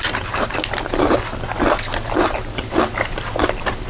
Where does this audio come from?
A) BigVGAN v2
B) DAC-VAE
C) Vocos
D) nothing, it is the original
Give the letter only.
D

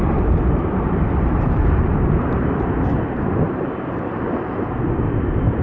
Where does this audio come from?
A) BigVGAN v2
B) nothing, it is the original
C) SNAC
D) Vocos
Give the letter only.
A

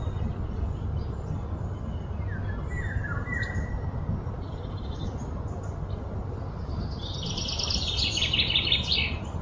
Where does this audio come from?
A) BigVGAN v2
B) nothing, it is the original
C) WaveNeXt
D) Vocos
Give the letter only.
B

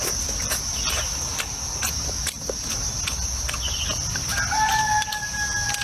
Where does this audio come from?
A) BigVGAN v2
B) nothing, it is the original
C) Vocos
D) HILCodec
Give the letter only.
B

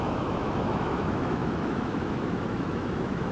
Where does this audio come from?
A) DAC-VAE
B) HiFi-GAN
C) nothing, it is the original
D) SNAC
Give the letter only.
A